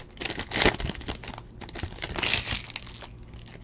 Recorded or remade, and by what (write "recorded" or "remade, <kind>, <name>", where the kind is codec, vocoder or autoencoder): recorded